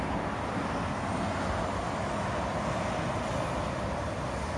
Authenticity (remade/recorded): recorded